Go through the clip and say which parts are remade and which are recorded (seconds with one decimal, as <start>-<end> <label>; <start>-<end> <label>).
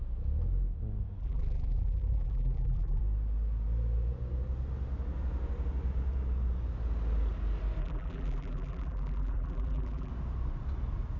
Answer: 0.0-1.2 recorded; 1.2-3.0 remade; 3.0-7.8 recorded; 7.8-10.1 remade; 10.1-11.2 recorded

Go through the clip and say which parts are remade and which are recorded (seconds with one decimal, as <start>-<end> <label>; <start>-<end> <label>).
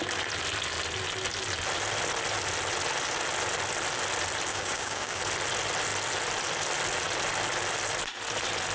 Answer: 0.0-4.5 recorded; 4.5-5.2 remade; 5.2-8.7 recorded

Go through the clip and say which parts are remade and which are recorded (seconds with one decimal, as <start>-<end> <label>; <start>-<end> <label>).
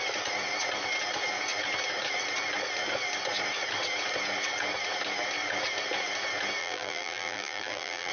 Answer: 0.0-6.6 recorded; 6.6-8.1 remade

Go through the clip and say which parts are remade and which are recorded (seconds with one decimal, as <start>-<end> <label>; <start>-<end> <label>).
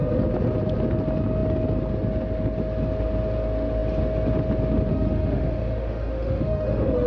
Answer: 0.0-4.9 recorded; 4.9-7.1 remade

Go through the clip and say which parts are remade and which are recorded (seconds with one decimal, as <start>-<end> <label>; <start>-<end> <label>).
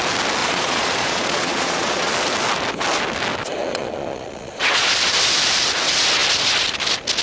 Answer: 0.0-0.4 recorded; 0.4-2.1 remade; 2.1-3.6 recorded; 3.6-4.9 remade; 4.9-7.2 recorded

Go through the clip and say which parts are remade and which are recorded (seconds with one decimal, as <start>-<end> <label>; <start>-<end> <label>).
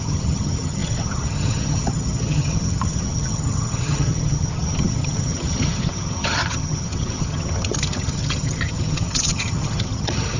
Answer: 0.0-10.4 remade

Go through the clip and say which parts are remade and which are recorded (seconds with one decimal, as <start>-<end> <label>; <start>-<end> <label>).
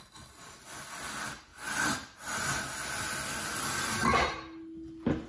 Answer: 0.0-5.3 recorded